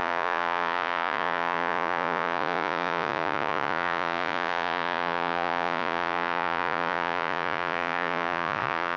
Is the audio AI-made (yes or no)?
yes